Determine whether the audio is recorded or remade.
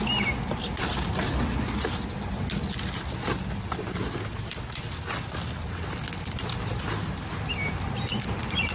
recorded